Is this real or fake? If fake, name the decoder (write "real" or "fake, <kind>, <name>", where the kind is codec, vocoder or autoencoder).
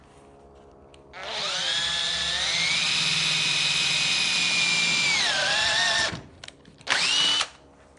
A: real